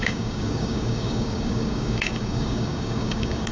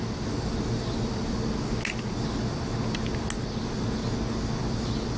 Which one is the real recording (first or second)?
second